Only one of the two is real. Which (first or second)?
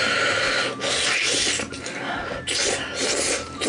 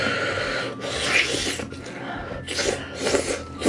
second